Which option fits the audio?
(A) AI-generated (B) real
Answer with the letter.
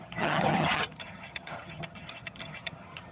A